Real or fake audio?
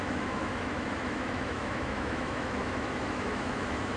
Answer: fake